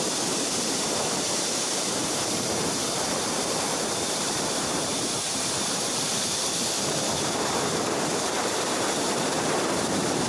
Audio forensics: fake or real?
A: fake